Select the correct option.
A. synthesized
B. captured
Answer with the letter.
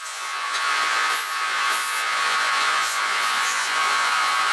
A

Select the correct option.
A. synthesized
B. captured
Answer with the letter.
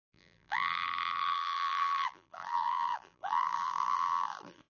A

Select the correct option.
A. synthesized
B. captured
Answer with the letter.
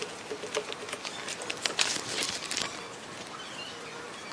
B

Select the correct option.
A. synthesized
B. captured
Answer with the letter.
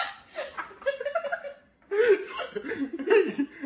B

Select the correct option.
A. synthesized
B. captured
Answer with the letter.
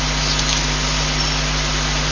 B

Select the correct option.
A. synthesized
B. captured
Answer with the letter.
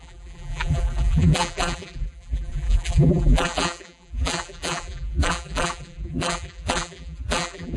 A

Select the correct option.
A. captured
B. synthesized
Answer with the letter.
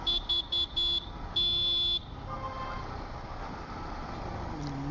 A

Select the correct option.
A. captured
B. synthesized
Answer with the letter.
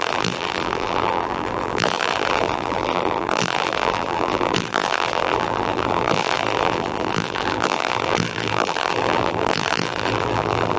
B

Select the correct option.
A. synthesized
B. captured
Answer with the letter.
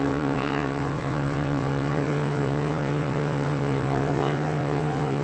A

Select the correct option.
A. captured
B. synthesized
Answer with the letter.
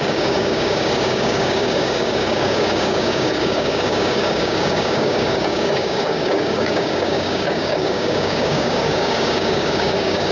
B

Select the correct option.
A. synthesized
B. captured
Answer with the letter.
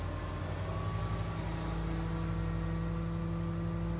B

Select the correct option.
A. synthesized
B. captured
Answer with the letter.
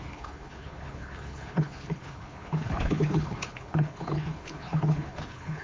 A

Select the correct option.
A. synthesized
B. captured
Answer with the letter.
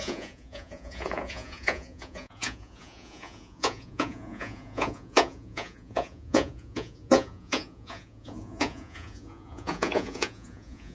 A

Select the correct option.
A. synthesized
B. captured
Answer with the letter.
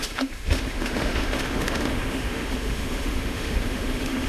A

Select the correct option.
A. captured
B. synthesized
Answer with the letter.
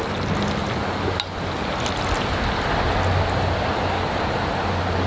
A